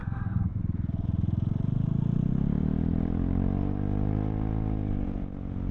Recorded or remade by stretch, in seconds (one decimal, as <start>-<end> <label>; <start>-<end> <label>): 0.0-0.6 remade; 0.6-5.7 recorded